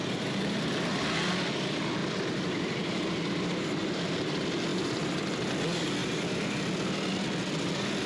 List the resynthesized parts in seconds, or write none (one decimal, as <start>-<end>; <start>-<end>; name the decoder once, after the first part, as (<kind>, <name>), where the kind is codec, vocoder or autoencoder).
2.0-3.3 (vocoder, BigVGAN v2); 4.7-5.3